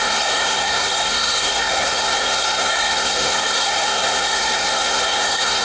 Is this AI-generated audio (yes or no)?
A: yes